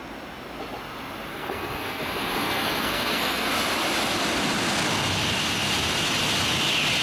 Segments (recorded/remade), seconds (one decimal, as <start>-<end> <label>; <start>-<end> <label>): 0.0-1.3 recorded; 1.3-3.5 remade; 3.5-7.0 recorded

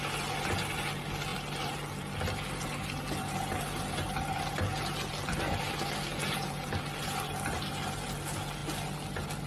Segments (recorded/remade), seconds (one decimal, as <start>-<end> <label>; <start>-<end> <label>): 0.0-9.5 recorded

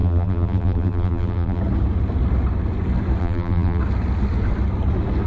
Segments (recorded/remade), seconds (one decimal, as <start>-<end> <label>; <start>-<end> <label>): 0.0-1.6 remade; 1.6-3.2 recorded; 3.2-3.8 remade; 3.8-5.3 recorded

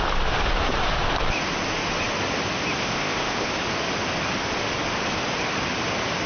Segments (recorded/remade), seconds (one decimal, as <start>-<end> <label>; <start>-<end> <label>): 0.0-2.8 recorded; 2.8-3.5 remade; 3.5-6.3 recorded

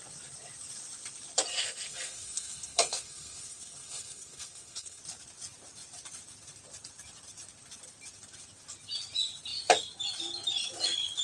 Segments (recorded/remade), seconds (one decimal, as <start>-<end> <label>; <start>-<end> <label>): 0.0-1.6 recorded; 1.6-5.0 remade; 5.0-11.2 recorded